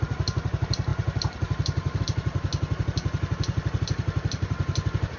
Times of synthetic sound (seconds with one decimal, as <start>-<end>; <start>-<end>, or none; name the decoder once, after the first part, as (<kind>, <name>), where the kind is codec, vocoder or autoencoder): 0.0-2.5 (vocoder, BigVGAN v2); 3.8-5.2